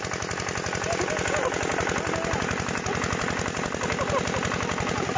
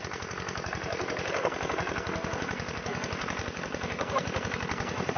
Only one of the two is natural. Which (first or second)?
first